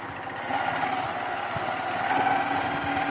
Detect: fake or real real